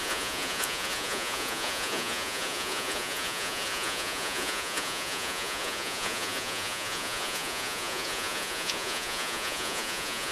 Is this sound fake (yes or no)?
yes